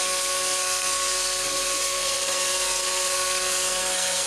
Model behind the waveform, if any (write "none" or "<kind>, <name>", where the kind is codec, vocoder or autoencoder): codec, SNAC